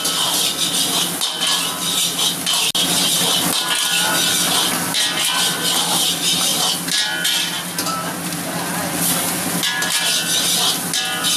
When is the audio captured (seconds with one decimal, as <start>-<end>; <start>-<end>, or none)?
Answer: 0.0-11.4